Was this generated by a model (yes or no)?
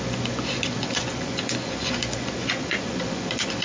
yes